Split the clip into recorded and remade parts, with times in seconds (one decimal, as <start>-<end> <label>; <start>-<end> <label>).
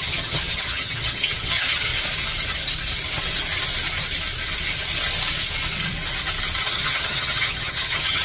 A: 0.0-1.9 remade; 1.9-6.6 recorded; 6.6-8.2 remade